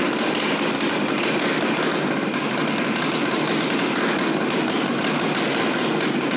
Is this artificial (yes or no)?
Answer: no